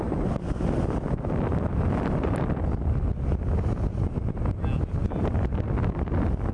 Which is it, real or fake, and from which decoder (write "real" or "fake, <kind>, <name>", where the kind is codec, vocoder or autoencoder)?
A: real